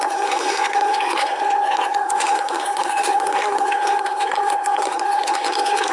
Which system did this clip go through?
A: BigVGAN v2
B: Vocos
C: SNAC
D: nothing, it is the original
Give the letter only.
C